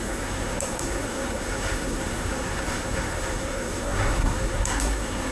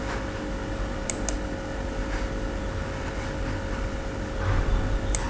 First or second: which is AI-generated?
first